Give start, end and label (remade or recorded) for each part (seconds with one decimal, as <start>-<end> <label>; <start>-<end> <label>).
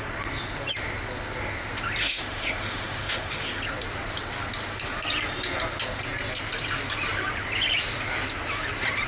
0.0-2.0 recorded; 2.0-3.6 remade; 3.6-9.1 recorded